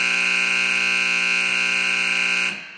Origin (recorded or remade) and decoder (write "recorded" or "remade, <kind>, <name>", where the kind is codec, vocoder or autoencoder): recorded